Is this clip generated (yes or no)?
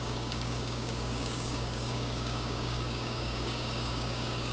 yes